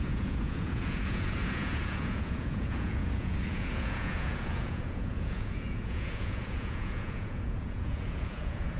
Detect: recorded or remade remade